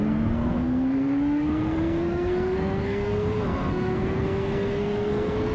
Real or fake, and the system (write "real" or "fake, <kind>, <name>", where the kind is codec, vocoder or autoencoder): fake, codec, SNAC